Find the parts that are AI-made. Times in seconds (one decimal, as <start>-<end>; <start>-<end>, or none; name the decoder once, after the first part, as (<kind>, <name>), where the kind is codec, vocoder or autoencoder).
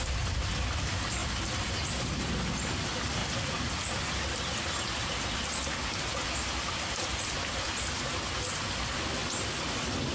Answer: none